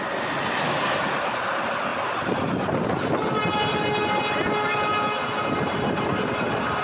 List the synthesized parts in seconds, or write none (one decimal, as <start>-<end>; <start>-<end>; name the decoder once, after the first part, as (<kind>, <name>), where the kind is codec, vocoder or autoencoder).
none